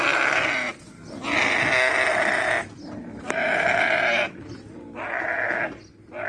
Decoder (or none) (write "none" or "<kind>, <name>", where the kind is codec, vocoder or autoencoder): none